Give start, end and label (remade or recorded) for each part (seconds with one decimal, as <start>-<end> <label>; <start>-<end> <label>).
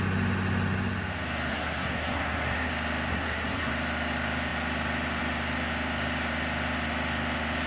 0.0-1.5 recorded; 1.5-2.7 remade; 2.7-3.1 recorded; 3.1-3.7 remade; 3.7-7.7 recorded